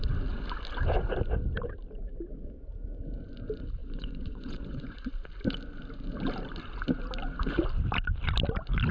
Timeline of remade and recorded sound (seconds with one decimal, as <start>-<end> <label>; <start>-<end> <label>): 0.0-3.8 recorded; 3.8-5.1 remade; 5.1-8.9 recorded